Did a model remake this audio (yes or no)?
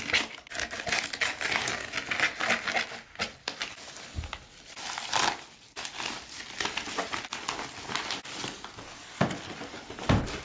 no